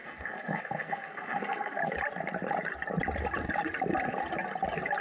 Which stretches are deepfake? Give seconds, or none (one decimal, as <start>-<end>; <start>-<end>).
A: 0.0-1.8